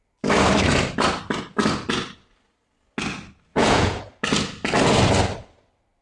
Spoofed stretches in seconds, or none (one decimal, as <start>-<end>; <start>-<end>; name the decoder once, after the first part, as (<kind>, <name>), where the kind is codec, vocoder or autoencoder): 3.5-4.0 (vocoder, Vocos)